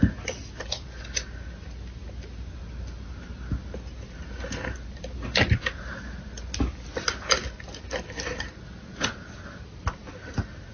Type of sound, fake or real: real